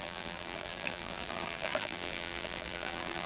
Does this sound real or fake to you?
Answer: fake